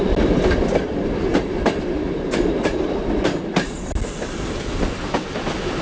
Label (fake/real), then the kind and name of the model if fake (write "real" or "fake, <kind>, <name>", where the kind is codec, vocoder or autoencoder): real